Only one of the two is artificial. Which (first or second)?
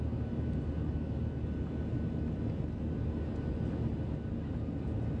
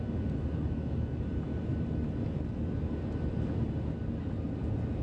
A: second